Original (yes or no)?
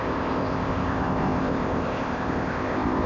no